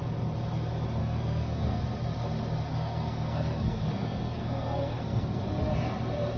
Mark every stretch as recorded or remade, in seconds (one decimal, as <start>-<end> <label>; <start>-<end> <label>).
0.0-1.0 recorded; 1.0-1.8 remade; 1.8-2.7 recorded; 2.7-5.4 remade; 5.4-6.4 recorded